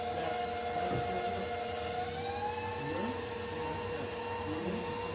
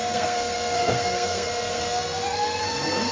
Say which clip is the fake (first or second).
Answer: second